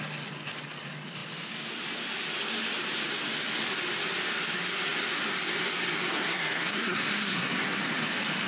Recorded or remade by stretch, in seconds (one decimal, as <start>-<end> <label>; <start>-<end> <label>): 0.0-6.1 recorded; 6.1-7.8 remade; 7.8-8.5 recorded